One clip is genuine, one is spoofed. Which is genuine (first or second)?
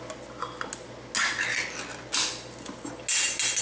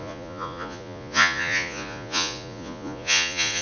first